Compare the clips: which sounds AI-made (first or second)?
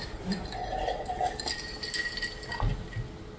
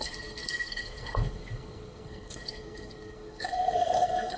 second